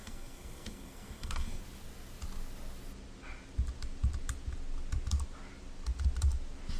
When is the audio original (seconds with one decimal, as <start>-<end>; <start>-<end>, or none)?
1.6-6.8